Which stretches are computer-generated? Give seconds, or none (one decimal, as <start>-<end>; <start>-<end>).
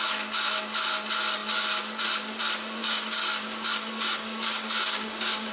2.8-5.5